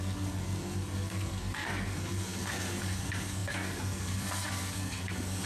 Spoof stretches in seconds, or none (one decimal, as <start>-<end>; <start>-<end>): 0.0-5.5